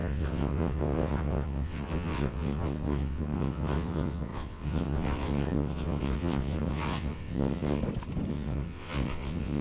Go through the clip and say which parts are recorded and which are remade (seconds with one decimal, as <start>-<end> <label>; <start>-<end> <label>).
0.0-7.8 remade; 7.8-8.3 recorded; 8.3-9.6 remade